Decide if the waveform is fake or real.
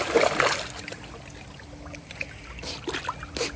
real